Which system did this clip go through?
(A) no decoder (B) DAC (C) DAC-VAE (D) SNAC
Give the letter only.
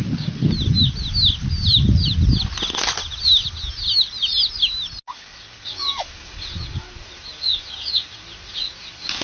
A